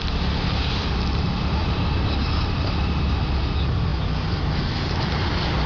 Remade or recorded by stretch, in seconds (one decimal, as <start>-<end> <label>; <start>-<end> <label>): 0.0-5.7 recorded